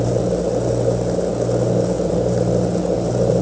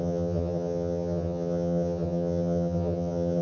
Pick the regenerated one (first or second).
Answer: second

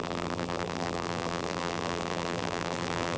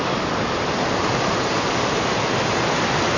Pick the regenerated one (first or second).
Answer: first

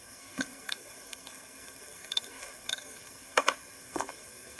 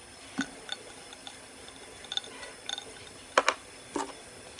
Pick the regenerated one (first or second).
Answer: first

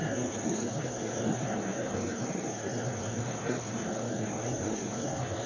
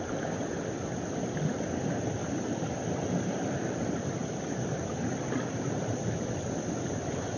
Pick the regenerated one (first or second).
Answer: first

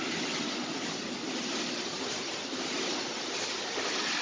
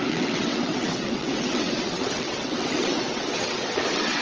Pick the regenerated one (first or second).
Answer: second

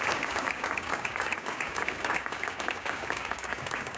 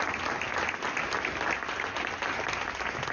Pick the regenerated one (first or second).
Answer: first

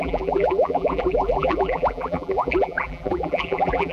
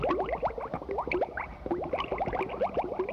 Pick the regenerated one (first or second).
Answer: first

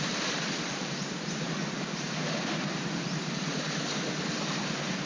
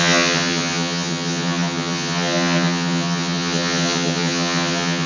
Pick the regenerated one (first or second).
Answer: second